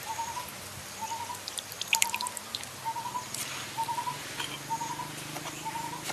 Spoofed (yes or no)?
no